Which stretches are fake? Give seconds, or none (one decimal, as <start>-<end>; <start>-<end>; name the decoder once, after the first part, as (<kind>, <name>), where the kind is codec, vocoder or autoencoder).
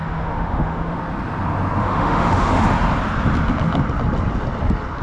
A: 0.0-1.0 (autoencoder, DAC-VAE); 1.8-2.6